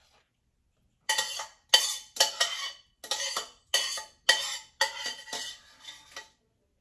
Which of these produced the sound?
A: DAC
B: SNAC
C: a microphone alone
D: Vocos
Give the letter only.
C